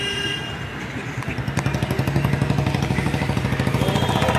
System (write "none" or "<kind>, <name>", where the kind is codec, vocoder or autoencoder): none